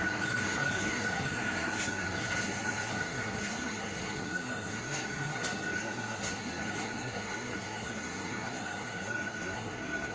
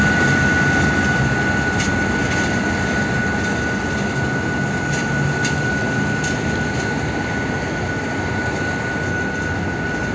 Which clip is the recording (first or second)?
second